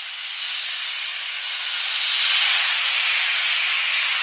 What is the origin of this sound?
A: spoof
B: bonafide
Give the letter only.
B